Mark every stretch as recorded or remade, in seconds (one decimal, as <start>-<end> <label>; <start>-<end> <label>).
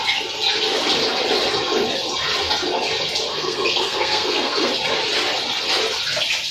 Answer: 0.0-3.3 recorded; 3.3-4.7 remade; 4.7-6.5 recorded